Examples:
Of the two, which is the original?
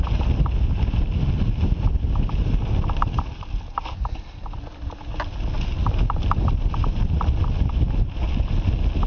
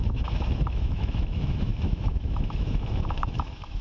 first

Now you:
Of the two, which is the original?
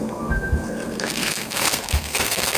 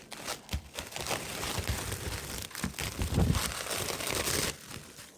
second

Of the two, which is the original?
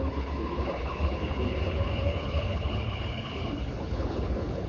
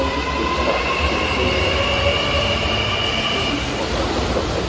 second